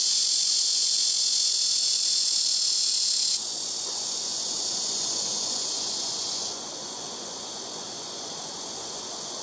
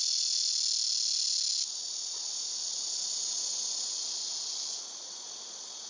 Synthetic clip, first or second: first